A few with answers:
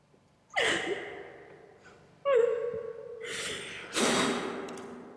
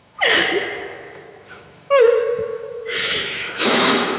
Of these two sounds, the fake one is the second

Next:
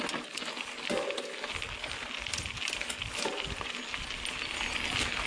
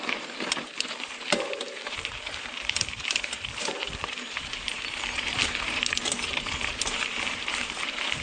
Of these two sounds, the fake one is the second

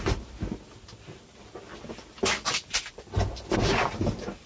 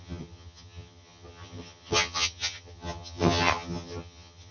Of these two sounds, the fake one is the second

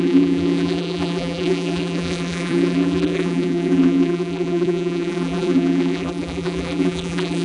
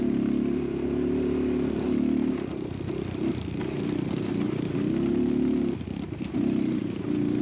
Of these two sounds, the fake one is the first